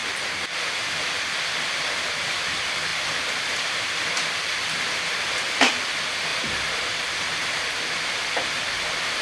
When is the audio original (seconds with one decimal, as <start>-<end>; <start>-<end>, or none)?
0.0-1.0; 6.3-7.9

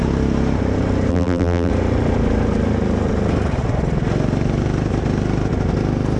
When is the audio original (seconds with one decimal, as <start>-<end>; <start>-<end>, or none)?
0.0-1.1; 1.7-6.2

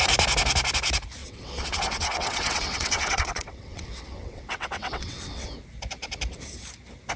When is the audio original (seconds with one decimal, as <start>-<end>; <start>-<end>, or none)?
0.0-1.2; 5.5-7.2